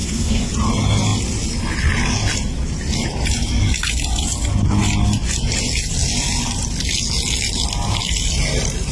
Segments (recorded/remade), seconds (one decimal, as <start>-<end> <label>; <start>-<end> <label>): 0.0-0.5 remade; 0.5-8.9 recorded